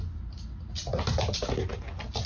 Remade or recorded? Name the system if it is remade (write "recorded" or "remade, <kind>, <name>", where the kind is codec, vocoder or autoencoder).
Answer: recorded